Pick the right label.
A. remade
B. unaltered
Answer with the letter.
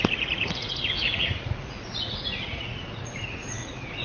A